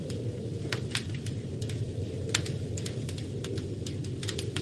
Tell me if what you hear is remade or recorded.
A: recorded